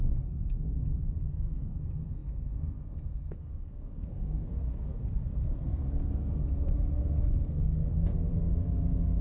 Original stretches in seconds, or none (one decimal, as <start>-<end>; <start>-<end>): 7.0-7.5; 8.3-9.2